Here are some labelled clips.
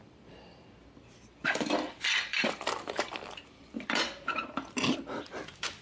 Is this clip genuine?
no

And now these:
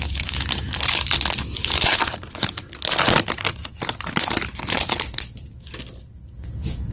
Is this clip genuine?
yes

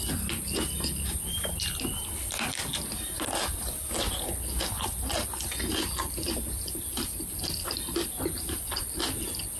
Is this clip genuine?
yes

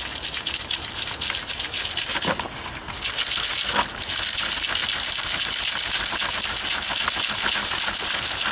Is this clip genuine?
yes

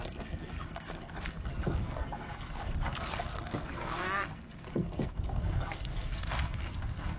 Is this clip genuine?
no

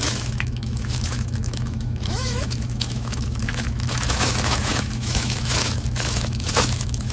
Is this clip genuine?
no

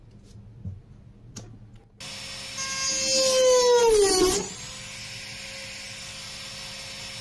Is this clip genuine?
yes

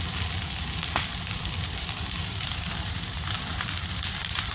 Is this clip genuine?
no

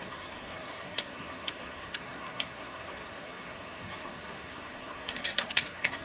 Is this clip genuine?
no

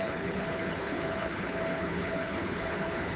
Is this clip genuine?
no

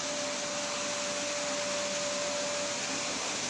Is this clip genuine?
yes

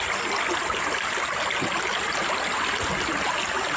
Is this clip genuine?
yes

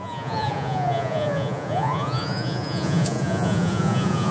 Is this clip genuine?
no